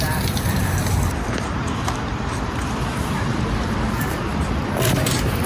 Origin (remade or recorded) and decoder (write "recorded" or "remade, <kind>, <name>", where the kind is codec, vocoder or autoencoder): remade, vocoder, BigVGAN v2